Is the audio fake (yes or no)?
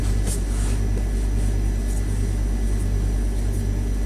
no